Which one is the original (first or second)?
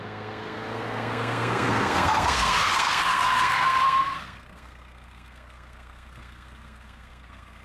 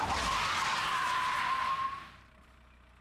second